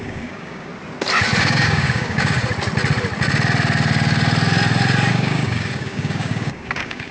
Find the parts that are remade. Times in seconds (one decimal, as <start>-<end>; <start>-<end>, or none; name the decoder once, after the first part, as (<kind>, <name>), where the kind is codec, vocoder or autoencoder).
0.0-0.7 (codec, DAC); 1.4-2.4; 5.1-7.1